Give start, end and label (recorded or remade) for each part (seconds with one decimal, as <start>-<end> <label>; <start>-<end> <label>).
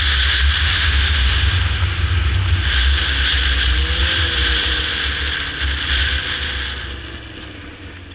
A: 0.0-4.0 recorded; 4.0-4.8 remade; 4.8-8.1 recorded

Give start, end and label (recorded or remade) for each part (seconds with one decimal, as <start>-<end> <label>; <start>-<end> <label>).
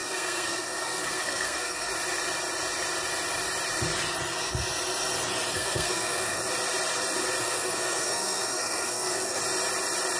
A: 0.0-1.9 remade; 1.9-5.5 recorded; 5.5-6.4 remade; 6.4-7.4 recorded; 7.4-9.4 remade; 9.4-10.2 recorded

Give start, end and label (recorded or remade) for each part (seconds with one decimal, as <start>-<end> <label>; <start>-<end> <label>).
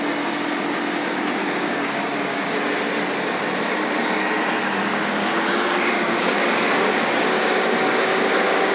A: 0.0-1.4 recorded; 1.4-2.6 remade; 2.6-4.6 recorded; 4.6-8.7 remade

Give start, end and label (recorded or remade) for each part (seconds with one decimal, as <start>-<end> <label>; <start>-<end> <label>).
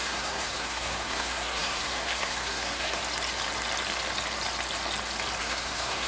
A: 0.0-3.0 remade; 3.0-5.4 recorded; 5.4-6.1 remade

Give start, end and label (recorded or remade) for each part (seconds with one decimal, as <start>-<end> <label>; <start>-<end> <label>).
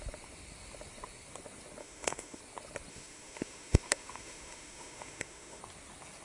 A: 0.0-1.8 recorded; 1.8-2.4 remade; 2.4-2.9 recorded; 2.9-5.6 remade; 5.6-6.2 recorded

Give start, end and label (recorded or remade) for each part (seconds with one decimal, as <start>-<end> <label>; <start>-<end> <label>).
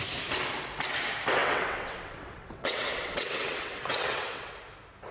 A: 0.0-1.4 recorded; 1.4-4.5 remade; 4.5-5.1 recorded